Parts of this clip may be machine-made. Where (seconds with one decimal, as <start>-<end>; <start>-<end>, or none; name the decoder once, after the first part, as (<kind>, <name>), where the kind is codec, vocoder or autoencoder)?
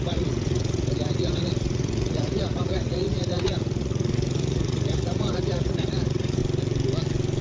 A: 0.0-6.4 (vocoder, Vocos)